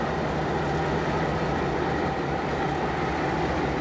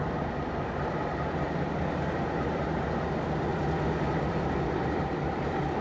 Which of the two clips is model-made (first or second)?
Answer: second